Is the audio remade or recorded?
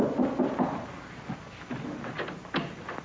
recorded